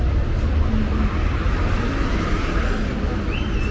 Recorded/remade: recorded